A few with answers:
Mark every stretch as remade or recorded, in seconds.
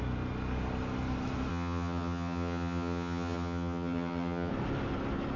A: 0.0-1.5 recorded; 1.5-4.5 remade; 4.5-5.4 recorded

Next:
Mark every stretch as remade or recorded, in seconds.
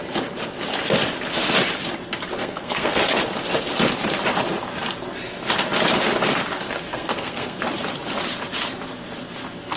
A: 0.0-2.4 recorded; 2.4-3.0 remade; 3.0-6.9 recorded; 6.9-7.6 remade; 7.6-9.8 recorded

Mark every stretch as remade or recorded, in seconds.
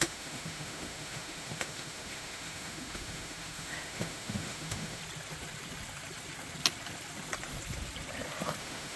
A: 0.0-5.0 remade; 5.0-8.6 recorded; 8.6-9.0 remade